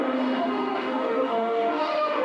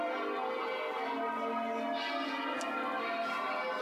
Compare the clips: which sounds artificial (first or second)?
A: first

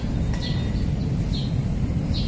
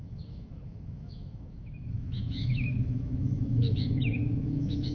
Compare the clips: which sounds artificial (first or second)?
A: second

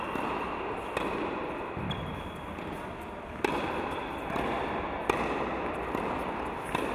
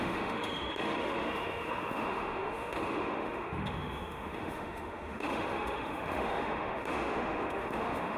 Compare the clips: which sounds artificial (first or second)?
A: second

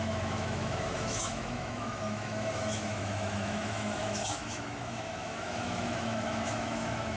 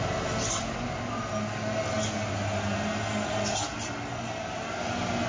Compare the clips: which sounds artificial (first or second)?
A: first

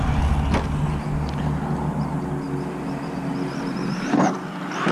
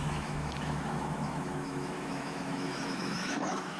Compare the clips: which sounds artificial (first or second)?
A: second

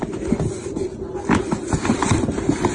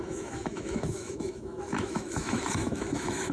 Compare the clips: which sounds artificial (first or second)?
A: second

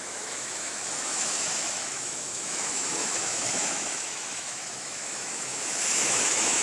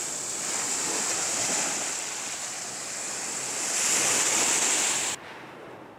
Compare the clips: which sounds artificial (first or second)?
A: first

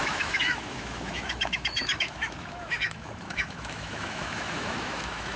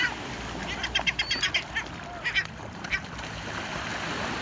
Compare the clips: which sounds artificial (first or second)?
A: first